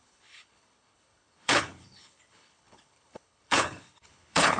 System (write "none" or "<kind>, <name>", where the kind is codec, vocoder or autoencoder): codec, HILCodec